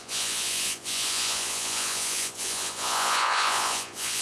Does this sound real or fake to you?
fake